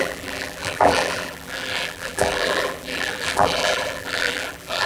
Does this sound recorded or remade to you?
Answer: remade